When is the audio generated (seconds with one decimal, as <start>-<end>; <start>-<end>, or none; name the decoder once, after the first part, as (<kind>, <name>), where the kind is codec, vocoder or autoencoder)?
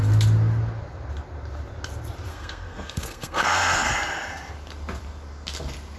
2.3-3.9 (codec, SNAC)